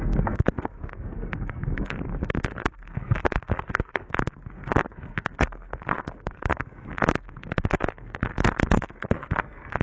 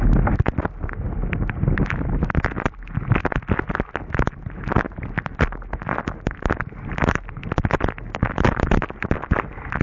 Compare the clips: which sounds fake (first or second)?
first